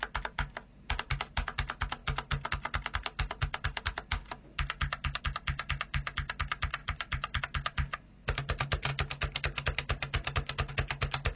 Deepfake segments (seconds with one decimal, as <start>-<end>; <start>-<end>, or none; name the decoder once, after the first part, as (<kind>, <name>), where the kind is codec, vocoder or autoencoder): 6.8-7.4 (vocoder, BigVGAN v2)